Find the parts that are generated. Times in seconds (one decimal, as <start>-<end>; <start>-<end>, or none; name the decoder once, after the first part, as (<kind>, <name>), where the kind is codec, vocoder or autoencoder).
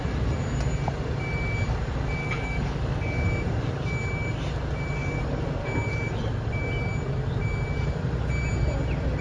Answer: 2.2-3.3 (codec, DAC)